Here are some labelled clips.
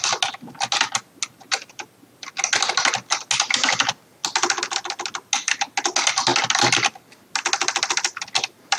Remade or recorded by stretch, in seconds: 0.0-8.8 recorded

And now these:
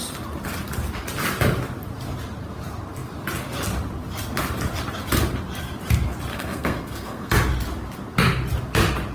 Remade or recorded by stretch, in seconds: 0.0-6.3 recorded; 6.3-7.3 remade; 7.3-9.1 recorded

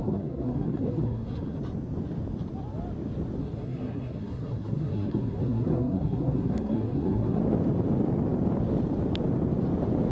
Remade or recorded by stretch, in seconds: 0.0-1.6 remade; 1.6-3.4 recorded; 3.4-7.4 remade; 7.4-10.1 recorded

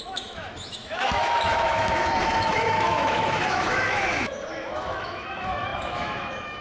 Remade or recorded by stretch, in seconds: 0.0-6.6 remade

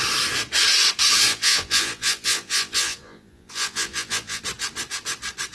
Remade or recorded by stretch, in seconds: 0.0-1.3 recorded; 1.3-4.4 remade; 4.4-5.5 recorded

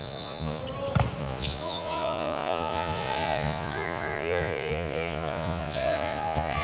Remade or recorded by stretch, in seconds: 0.0-0.6 remade; 0.6-1.2 recorded; 1.2-6.6 remade